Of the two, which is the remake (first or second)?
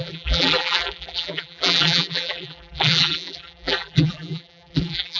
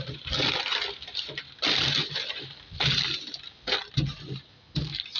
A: first